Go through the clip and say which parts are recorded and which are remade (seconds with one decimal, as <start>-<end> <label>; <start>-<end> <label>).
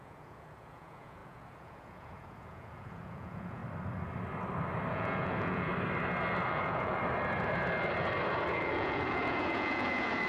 0.0-3.6 remade; 3.6-4.9 recorded; 4.9-5.7 remade; 5.7-6.5 recorded; 6.5-7.0 remade; 7.0-8.5 recorded; 8.5-10.3 remade